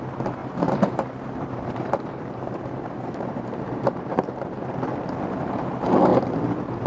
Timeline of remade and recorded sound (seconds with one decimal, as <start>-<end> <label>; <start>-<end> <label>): 0.0-0.4 recorded; 0.4-4.3 remade; 4.3-6.9 recorded